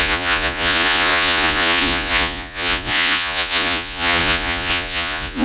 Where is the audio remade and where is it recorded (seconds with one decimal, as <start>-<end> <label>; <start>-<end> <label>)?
0.0-5.4 remade